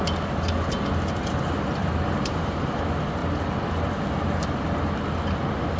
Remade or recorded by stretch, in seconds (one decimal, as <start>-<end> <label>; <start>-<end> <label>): 0.0-1.8 recorded; 1.8-2.8 remade; 2.8-5.8 recorded